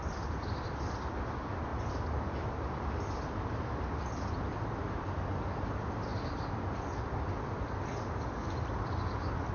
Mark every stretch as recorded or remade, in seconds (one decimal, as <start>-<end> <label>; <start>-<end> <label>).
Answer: 0.0-9.5 recorded